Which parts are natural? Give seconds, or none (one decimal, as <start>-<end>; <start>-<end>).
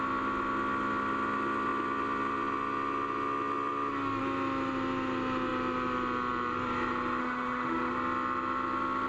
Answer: 0.0-7.2; 7.9-9.1